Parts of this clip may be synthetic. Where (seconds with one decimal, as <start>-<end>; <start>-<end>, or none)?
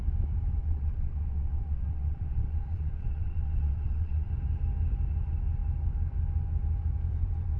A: 0.6-4.3